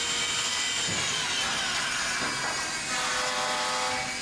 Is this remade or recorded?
recorded